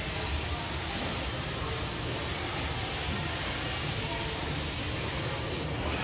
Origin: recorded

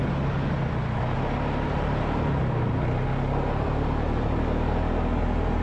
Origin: recorded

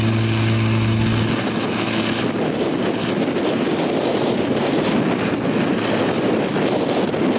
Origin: recorded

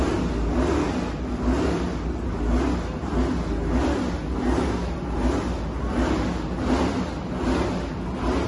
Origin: recorded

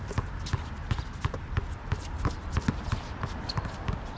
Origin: recorded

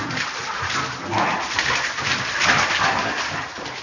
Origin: recorded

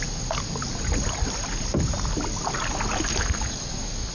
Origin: recorded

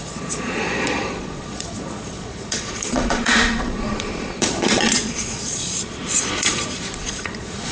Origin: remade